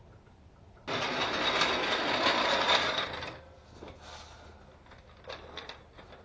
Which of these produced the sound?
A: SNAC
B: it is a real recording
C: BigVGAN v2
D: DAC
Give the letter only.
B